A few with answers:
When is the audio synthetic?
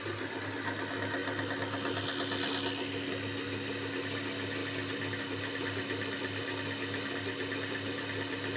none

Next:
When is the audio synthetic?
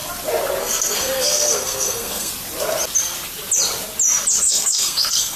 0.6-2.3 (codec, SNAC); 4.4-5.4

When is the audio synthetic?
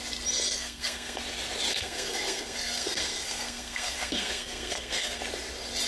0.5-1.2 (codec, SNAC); 1.7-5.2